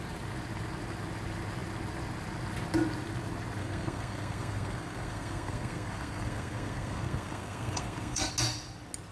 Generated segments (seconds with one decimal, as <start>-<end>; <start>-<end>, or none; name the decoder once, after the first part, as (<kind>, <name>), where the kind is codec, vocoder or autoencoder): 3.6-8.3 (codec, SNAC)